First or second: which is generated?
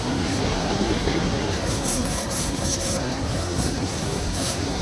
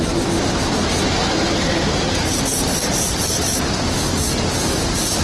first